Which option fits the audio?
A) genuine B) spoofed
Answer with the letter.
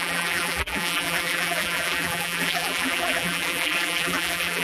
B